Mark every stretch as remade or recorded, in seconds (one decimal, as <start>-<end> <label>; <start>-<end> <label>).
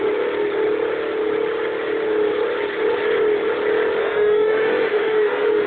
0.0-4.0 recorded; 4.0-5.7 remade